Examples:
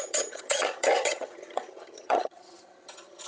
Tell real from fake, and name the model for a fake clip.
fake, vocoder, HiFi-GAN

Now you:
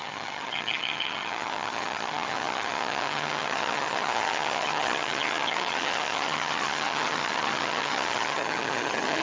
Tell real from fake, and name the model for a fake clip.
fake, vocoder, HiFi-GAN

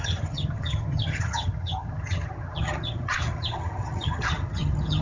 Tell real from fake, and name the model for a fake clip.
fake, vocoder, HiFi-GAN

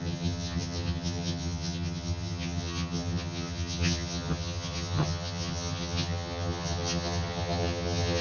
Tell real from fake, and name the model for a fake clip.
fake, vocoder, HiFi-GAN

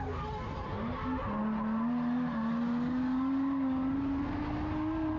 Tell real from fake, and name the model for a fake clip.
real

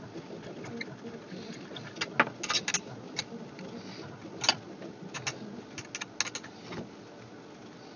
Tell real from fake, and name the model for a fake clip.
real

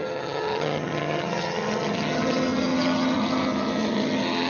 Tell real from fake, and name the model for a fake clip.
fake, vocoder, HiFi-GAN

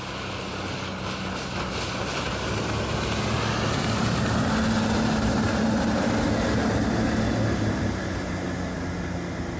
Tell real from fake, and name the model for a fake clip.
real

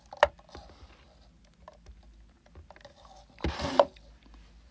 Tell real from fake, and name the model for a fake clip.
real